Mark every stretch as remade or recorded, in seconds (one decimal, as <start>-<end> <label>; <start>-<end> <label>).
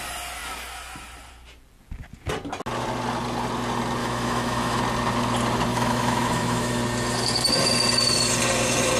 0.0-4.0 recorded; 4.0-4.8 remade; 4.8-5.7 recorded; 5.7-6.8 remade; 6.8-9.0 recorded